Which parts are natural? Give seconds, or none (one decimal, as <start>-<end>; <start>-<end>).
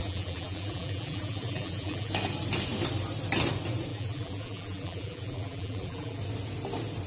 2.1-3.9; 6.2-7.1